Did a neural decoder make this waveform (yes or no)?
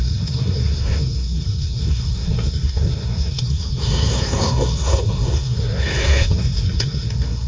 yes